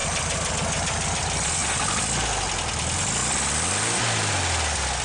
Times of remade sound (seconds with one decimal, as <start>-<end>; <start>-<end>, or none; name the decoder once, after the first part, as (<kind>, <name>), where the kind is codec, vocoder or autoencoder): none